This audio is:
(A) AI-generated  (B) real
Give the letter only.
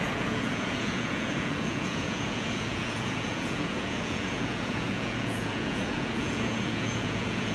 A